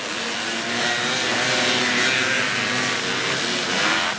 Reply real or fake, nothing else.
real